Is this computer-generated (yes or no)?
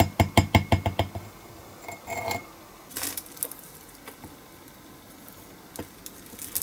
no